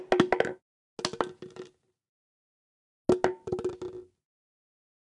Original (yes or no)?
yes